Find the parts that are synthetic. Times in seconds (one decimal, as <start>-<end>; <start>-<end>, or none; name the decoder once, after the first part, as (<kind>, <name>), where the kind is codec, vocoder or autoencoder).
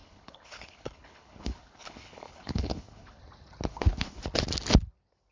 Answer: 0.0-3.2 (codec, HILCodec); 3.7-4.2